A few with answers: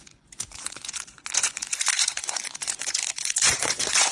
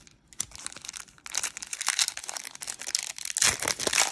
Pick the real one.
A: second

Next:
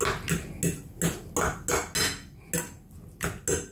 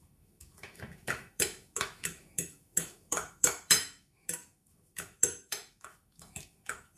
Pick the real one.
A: first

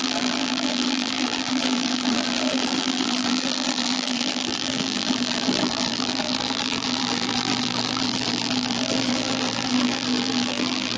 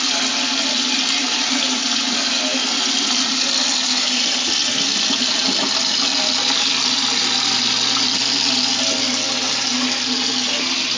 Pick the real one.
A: second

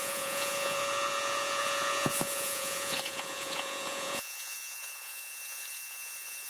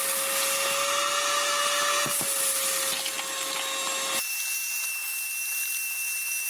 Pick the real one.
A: second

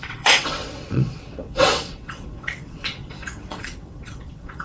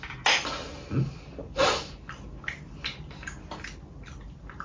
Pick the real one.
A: second